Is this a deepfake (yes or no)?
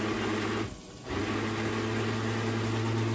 no